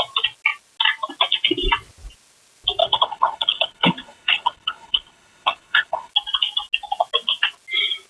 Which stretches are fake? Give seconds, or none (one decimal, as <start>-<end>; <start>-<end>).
2.8-6.1